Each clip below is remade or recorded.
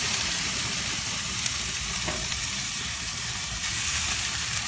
remade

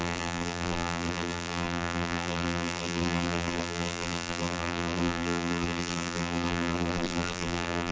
remade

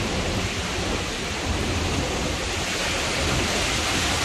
recorded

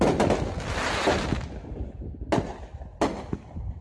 recorded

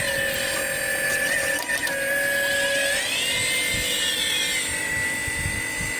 recorded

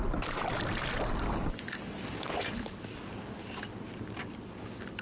recorded